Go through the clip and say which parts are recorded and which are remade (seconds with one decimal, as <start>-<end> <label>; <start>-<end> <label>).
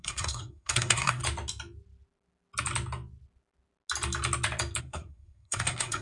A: 0.0-1.2 remade; 1.2-4.8 recorded; 4.8-6.0 remade